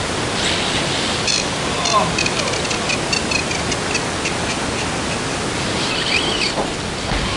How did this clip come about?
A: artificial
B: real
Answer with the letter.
B